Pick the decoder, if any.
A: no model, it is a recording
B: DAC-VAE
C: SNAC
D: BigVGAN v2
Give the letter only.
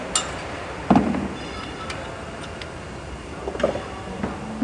A